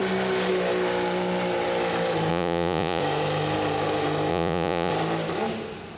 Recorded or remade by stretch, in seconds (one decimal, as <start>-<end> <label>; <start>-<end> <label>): 0.0-2.3 recorded; 2.3-3.0 remade; 3.0-4.3 recorded; 4.3-4.9 remade; 4.9-6.0 recorded